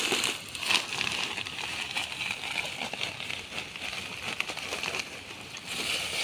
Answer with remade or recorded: recorded